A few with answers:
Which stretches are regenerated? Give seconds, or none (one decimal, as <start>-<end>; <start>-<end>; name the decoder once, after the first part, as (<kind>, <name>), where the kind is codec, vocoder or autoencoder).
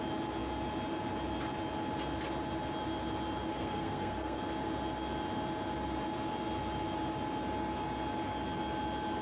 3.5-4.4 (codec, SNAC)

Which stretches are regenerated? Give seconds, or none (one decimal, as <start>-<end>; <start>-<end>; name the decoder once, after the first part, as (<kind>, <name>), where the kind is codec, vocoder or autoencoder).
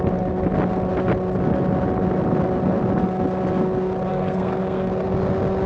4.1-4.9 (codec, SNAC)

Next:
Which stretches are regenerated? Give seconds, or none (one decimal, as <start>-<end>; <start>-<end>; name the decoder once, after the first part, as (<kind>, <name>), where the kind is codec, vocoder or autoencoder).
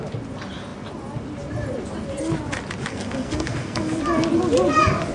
2.9-4.0 (codec, SNAC)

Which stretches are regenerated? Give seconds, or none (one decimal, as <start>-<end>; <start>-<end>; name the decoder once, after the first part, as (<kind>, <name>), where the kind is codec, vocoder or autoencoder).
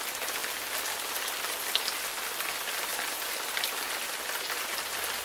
none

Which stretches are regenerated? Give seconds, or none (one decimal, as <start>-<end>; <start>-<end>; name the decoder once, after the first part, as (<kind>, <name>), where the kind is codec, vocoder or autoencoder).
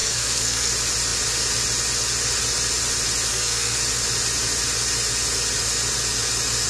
0.0-0.7 (codec, SNAC); 3.3-3.8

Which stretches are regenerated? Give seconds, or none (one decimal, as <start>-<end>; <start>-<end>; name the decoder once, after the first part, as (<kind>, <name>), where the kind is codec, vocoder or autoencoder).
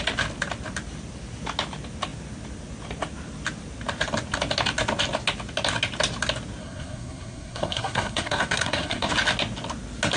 6.6-9.1 (codec, SNAC)